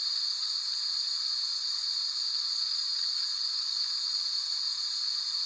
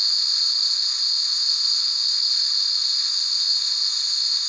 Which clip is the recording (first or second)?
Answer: first